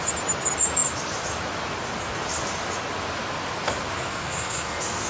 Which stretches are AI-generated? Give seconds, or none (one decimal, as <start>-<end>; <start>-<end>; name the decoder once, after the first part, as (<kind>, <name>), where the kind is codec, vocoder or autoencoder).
4.1-5.1 (codec, SNAC)